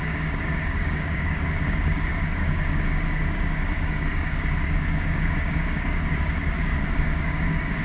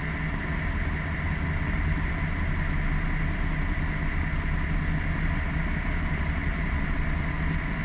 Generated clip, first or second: first